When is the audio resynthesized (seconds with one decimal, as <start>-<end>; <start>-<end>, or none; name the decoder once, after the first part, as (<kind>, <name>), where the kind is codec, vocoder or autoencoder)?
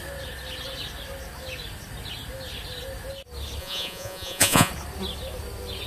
3.6-4.7 (vocoder, Vocos)